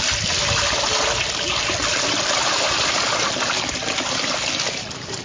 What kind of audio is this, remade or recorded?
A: recorded